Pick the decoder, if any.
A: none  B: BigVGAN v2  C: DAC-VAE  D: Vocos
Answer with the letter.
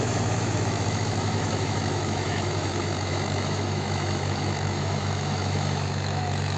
C